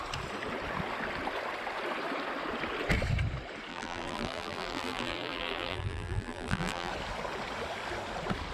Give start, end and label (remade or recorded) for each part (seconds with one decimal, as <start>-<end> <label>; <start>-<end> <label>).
0.0-3.7 recorded; 3.7-6.9 remade; 6.9-8.5 recorded